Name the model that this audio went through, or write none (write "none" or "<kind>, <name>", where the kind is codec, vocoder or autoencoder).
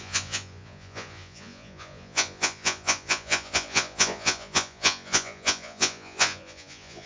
vocoder, Vocos